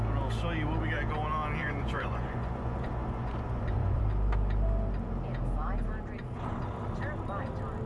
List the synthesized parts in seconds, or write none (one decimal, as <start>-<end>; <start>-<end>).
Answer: 1.6-4.0